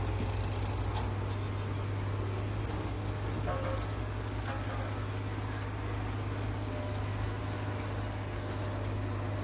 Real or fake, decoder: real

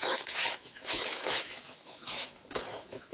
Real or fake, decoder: fake, autoencoder, DAC-VAE